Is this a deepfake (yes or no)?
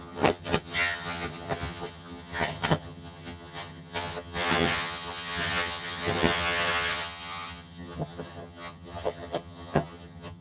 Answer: yes